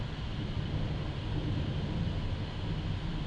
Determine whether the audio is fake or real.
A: real